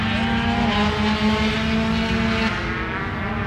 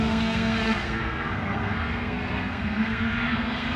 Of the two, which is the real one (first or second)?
first